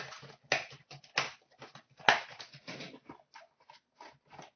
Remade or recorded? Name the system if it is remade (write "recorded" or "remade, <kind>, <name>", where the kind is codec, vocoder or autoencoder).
recorded